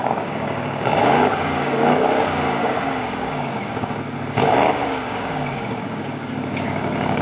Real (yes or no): no